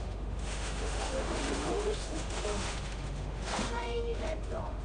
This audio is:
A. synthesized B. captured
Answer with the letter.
A